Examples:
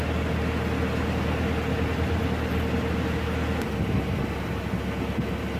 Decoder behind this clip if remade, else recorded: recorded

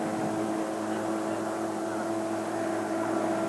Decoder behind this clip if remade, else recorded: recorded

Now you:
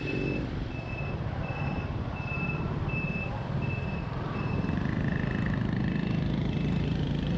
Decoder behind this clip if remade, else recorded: remade, vocoder, BigVGAN v2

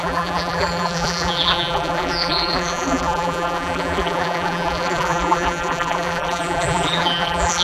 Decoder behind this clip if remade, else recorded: remade, vocoder, BigVGAN v2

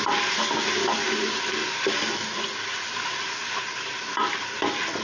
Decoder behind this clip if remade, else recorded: recorded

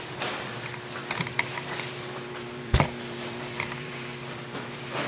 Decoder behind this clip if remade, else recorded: remade, vocoder, BigVGAN v2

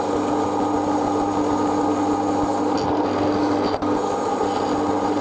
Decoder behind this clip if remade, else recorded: recorded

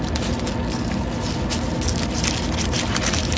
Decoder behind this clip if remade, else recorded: recorded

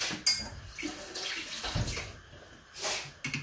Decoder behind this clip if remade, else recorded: recorded